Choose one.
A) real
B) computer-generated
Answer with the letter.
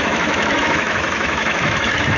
B